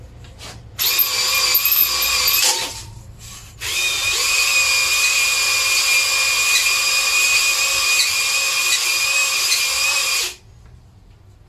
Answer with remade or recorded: recorded